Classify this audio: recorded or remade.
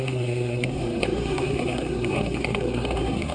remade